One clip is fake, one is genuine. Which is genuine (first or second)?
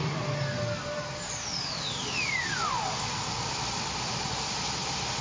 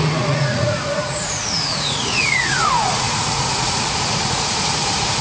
first